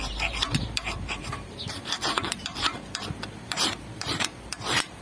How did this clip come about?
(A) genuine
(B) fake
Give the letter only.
B